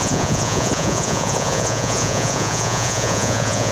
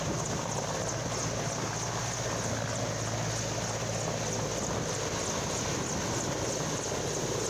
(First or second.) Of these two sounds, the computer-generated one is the first